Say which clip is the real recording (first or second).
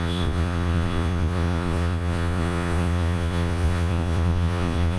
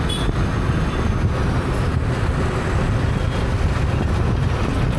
second